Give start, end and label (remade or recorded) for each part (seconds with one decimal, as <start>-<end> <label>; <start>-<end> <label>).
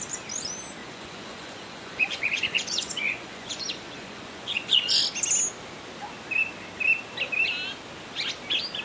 0.0-0.8 recorded; 0.8-5.0 remade; 5.0-8.8 recorded